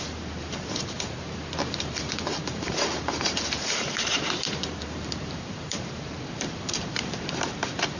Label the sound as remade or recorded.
remade